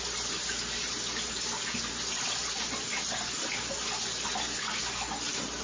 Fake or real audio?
real